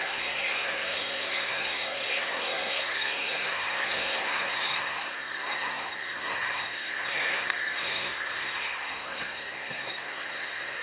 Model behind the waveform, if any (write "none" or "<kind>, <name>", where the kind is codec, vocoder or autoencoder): codec, SNAC